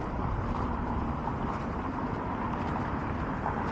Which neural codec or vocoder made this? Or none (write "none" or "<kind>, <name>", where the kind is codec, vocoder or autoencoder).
vocoder, BigVGAN v2